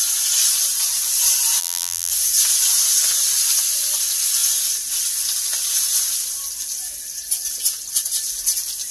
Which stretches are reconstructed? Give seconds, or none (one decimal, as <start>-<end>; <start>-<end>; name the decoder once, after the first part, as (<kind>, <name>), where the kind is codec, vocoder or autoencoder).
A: 1.6-2.1 (vocoder, BigVGAN v2)